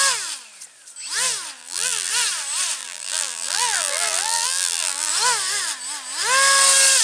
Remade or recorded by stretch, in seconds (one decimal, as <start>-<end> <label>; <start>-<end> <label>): 0.0-1.6 recorded; 1.6-2.1 remade; 2.1-2.8 recorded; 2.8-5.1 remade; 5.1-7.0 recorded